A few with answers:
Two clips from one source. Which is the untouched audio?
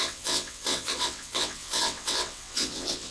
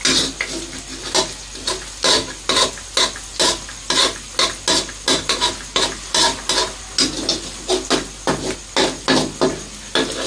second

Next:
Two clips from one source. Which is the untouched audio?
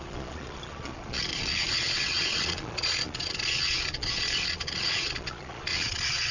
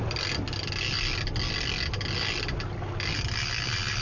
second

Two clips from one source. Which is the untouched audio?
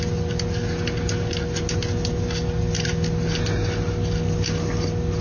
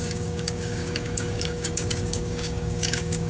first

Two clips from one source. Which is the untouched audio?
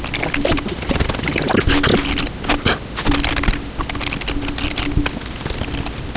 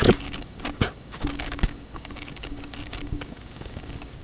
first